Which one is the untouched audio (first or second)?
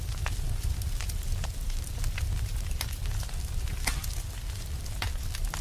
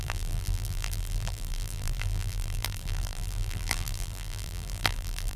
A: first